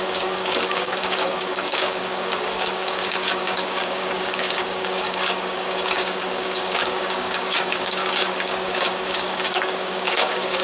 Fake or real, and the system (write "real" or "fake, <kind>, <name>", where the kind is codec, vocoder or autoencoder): fake, codec, DAC